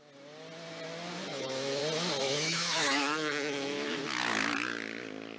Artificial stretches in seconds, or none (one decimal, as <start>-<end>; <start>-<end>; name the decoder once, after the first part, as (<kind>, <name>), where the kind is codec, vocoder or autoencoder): 1.3-1.8 (autoencoder, DAC-VAE); 2.2-4.0